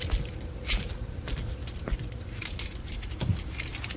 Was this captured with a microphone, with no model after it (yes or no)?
yes